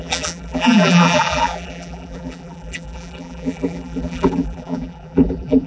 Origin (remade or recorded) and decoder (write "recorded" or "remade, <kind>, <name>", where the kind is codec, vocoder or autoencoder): remade, vocoder, BigVGAN v2